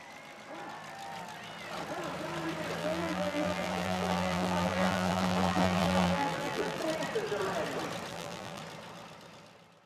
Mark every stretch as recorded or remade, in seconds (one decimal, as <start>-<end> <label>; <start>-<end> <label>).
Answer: 0.0-2.8 recorded; 2.8-6.8 remade; 6.8-8.1 recorded; 8.1-8.6 remade; 8.6-9.9 recorded